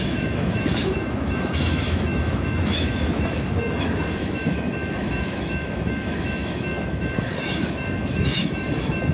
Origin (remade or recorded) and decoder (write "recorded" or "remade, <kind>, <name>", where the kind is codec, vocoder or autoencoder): remade, autoencoder, DAC-VAE